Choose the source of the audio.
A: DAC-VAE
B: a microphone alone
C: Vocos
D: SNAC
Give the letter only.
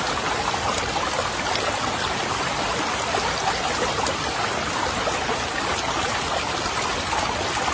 B